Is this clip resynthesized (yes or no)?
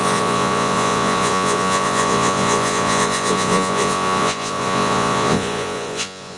yes